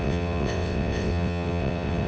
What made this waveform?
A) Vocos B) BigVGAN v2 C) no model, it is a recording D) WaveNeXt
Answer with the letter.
D